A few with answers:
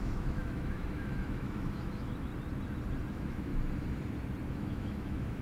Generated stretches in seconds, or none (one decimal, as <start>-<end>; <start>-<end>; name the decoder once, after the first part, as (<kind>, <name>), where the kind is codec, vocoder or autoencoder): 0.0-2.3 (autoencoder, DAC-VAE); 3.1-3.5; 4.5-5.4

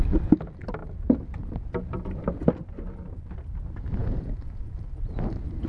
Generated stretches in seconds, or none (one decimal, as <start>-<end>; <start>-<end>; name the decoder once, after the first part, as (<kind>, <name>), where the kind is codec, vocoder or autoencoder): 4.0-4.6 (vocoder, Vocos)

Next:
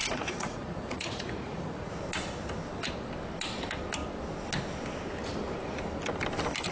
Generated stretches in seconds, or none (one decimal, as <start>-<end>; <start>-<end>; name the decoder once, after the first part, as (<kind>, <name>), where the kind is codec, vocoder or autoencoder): 0.0-1.9 (vocoder, Vocos)

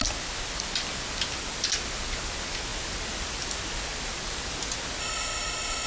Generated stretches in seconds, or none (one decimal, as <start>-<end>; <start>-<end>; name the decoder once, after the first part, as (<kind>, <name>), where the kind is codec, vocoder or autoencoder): 5.0-5.9 (autoencoder, DAC-VAE)